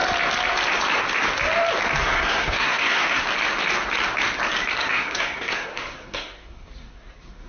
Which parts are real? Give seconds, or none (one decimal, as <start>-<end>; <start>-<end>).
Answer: 0.0-2.0; 3.2-4.8